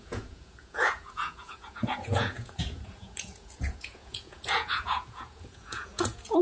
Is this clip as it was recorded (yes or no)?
no